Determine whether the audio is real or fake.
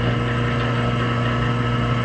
real